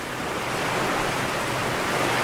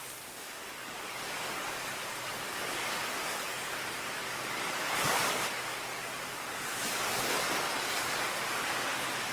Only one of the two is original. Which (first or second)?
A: first